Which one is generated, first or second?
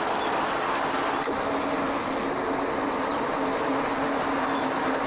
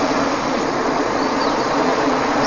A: second